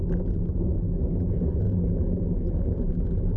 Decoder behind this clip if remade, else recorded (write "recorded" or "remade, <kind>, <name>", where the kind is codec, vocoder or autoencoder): recorded